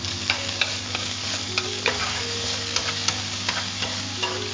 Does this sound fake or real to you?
fake